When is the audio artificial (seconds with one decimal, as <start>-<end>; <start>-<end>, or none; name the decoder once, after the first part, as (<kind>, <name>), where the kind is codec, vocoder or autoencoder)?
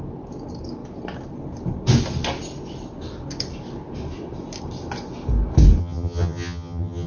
5.8-7.1 (vocoder, HiFi-GAN)